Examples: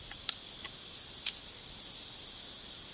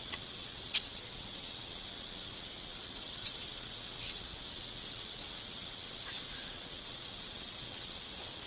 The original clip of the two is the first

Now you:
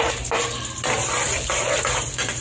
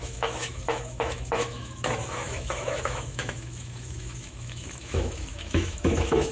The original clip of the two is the first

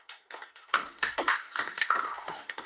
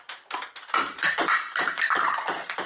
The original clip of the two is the second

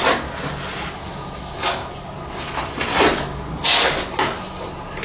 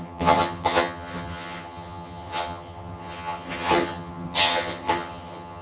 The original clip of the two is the first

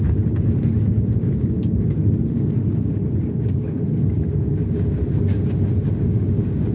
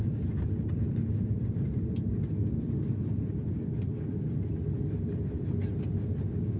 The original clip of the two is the second